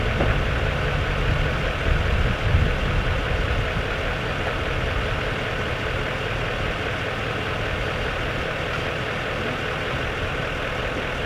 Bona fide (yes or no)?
yes